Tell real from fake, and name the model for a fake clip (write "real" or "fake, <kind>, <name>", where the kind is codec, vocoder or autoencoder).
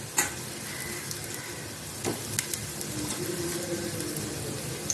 real